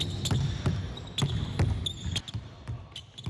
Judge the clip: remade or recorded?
recorded